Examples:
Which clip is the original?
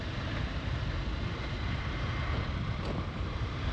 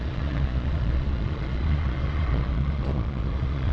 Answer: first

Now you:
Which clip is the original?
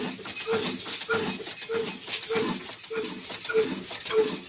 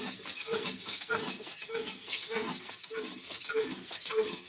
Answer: first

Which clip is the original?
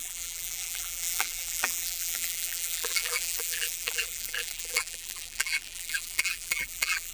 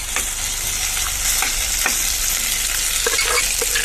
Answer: second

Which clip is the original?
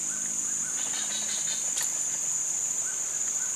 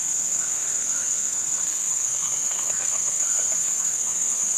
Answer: first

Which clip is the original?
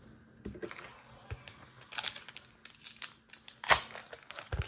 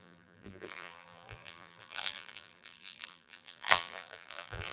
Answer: first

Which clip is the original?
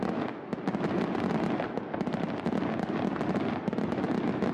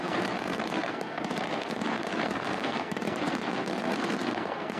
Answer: first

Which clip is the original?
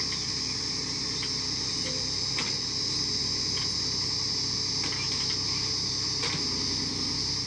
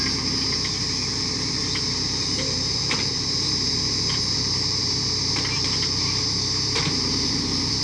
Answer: first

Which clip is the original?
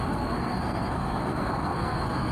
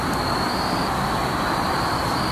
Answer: second